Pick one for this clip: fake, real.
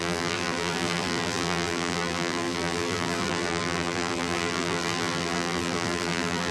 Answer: fake